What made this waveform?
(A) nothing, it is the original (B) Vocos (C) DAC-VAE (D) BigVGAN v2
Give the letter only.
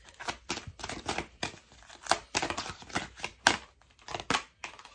A